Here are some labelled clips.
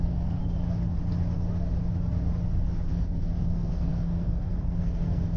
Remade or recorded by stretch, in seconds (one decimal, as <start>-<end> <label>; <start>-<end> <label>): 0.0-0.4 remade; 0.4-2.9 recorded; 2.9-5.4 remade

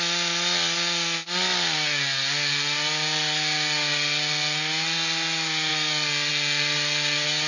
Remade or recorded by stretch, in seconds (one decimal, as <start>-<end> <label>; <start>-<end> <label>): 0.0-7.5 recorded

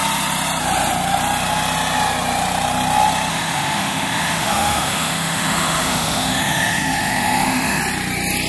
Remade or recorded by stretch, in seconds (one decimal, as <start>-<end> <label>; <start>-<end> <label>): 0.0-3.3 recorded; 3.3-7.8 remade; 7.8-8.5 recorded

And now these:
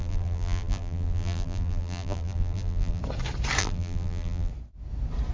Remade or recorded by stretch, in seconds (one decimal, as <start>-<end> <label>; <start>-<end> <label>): 0.0-3.0 remade; 3.0-3.6 recorded; 3.6-4.5 remade; 4.5-5.3 recorded

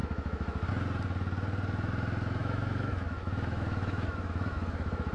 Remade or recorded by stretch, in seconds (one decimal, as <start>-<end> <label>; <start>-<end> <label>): 0.0-0.7 remade; 0.7-2.4 recorded; 2.4-5.1 remade

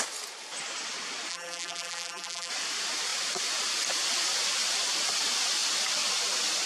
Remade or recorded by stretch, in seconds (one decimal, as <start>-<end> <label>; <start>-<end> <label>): 0.0-1.3 recorded; 1.3-2.5 remade; 2.5-6.7 recorded

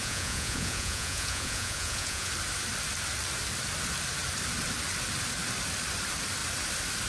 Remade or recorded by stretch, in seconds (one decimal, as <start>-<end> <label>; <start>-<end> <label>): 0.0-2.3 remade; 2.3-7.1 recorded

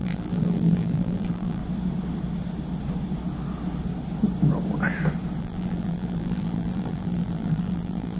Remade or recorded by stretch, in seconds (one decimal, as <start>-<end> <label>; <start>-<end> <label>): 0.0-1.6 remade; 1.6-5.4 recorded; 5.4-8.2 remade